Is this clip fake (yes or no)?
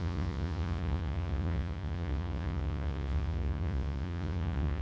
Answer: yes